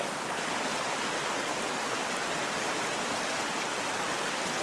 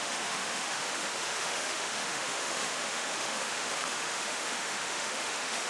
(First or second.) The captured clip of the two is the first